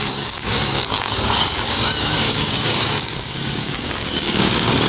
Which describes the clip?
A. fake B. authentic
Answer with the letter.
A